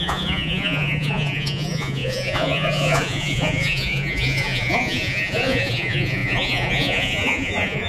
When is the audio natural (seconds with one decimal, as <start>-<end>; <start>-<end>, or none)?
none